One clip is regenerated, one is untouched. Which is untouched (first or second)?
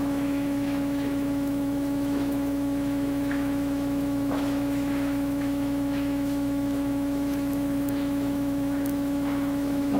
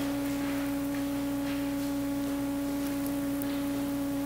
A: second